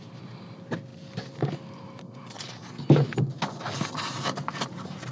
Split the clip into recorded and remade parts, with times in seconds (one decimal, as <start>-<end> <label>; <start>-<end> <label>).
0.0-5.1 recorded